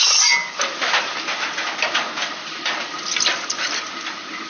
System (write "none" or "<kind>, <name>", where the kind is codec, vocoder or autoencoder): none